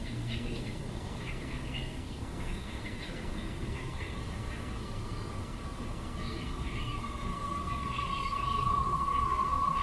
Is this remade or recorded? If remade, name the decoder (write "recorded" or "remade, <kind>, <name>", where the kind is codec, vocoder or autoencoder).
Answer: remade, codec, SNAC